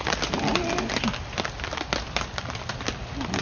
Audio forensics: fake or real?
real